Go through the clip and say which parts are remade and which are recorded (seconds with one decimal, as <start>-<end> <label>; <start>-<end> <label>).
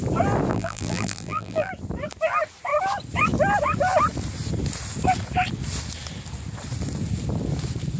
0.0-0.5 recorded; 0.5-1.7 remade; 1.7-8.0 recorded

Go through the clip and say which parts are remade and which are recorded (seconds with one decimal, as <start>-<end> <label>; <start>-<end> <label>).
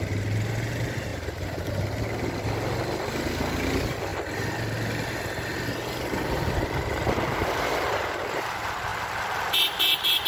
0.0-1.1 recorded; 1.1-1.7 remade; 1.7-10.3 recorded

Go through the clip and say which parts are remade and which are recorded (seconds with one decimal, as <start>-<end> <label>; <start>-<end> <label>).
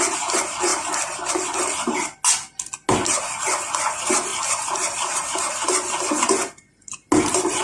0.0-0.7 recorded; 0.7-1.3 remade; 1.3-4.3 recorded; 4.3-5.4 remade; 5.4-7.6 recorded